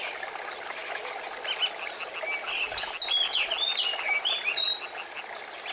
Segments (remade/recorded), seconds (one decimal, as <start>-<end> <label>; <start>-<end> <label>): 0.0-5.7 recorded